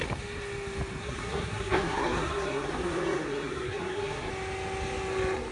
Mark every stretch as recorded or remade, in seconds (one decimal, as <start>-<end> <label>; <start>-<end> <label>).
0.0-1.0 recorded; 1.0-4.3 remade; 4.3-5.5 recorded